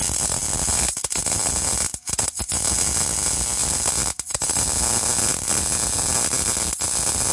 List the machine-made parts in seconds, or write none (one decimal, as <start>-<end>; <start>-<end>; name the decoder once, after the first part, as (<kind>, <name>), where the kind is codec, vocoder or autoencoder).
none